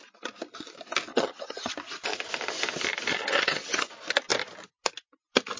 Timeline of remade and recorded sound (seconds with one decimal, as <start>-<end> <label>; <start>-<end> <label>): 0.0-1.1 recorded; 1.1-1.7 remade; 1.7-3.1 recorded; 3.1-3.9 remade; 3.9-5.6 recorded